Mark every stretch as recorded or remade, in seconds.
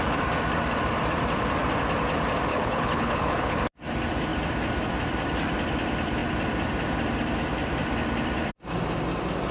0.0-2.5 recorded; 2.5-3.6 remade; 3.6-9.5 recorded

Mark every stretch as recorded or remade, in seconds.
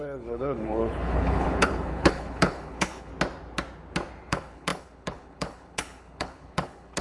0.0-3.1 remade; 3.1-4.3 recorded; 4.3-7.0 remade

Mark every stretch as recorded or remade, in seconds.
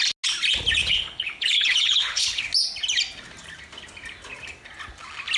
0.0-0.8 recorded; 0.8-2.4 remade; 2.4-5.4 recorded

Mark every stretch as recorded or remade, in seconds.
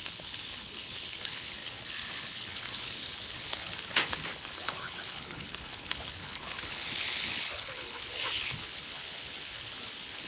0.0-10.3 remade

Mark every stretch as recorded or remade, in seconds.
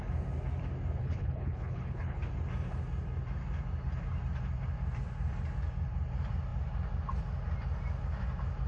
0.0-1.0 recorded; 1.0-2.2 remade; 2.2-8.7 recorded